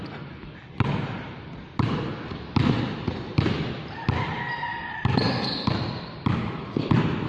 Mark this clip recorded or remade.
recorded